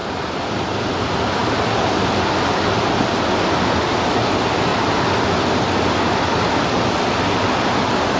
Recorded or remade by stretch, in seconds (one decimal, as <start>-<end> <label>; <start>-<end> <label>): 0.0-0.9 remade; 0.9-4.7 recorded; 4.7-6.7 remade; 6.7-8.2 recorded